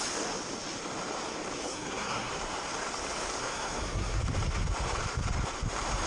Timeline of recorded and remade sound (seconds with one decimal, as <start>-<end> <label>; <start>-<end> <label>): 0.0-1.7 recorded; 1.7-2.3 remade; 2.3-3.4 recorded; 3.4-4.2 remade; 4.2-6.1 recorded